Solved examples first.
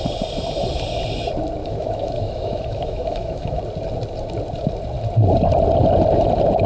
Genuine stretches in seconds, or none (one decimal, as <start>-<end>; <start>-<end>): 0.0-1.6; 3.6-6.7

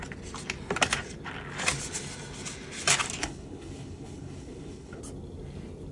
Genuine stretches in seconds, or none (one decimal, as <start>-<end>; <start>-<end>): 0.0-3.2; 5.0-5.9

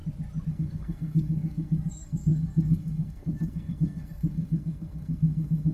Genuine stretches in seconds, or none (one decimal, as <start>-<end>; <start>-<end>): 0.0-0.5

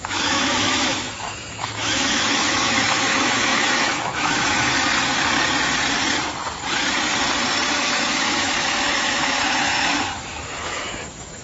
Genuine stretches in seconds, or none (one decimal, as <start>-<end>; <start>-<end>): 4.7-7.8